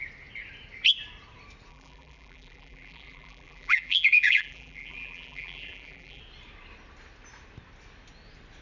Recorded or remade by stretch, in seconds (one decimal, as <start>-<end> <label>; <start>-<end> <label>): 0.0-1.7 recorded; 1.7-6.2 remade; 6.2-8.6 recorded

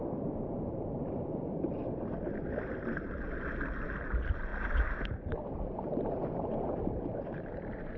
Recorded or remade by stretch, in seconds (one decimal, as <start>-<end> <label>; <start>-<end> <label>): 0.0-1.8 remade; 1.8-4.1 recorded; 4.1-4.5 remade; 4.5-5.3 recorded; 5.3-8.0 remade

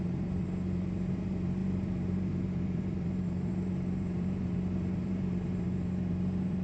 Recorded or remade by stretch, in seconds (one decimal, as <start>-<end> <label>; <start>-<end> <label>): 0.0-6.6 remade

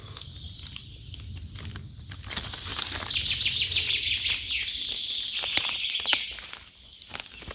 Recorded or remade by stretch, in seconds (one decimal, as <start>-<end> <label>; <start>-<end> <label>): 0.0-2.7 recorded; 2.7-4.0 remade; 4.0-7.5 recorded

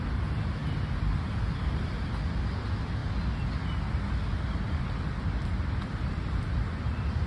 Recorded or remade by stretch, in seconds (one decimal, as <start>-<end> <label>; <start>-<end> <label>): 0.0-7.3 recorded